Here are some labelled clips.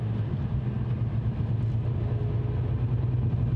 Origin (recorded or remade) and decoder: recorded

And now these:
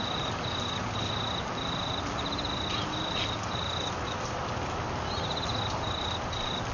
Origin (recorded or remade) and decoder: recorded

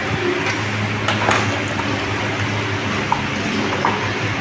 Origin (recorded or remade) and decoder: recorded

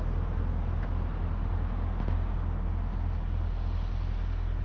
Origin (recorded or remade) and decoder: recorded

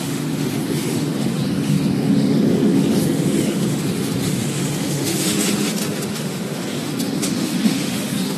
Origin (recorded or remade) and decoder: remade, autoencoder, DAC-VAE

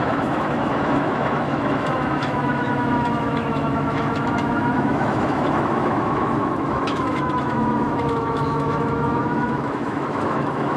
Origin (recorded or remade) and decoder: remade, autoencoder, DAC-VAE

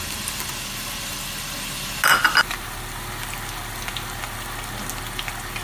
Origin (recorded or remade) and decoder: recorded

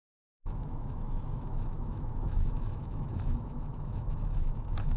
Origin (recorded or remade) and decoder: remade, autoencoder, DAC-VAE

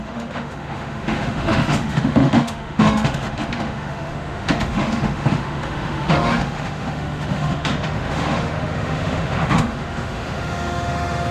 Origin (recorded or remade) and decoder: remade, autoencoder, DAC-VAE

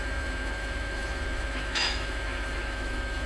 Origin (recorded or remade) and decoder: remade, autoencoder, DAC-VAE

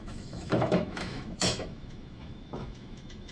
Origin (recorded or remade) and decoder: remade, autoencoder, DAC-VAE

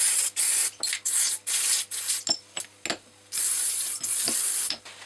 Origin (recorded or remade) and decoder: recorded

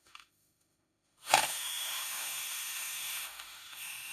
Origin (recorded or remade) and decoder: remade, autoencoder, DAC-VAE